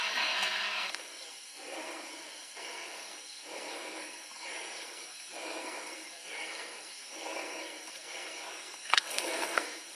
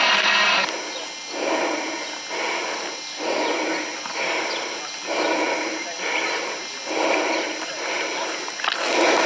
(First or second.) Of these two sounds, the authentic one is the second